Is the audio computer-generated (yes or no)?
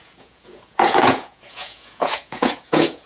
yes